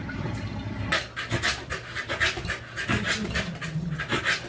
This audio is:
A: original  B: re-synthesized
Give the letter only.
A